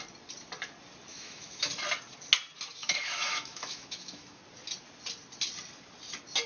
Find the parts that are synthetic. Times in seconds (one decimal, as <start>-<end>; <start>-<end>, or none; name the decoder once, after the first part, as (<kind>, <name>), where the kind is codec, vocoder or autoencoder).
1.1-1.7 (autoencoder, DAC-VAE); 2.8-4.4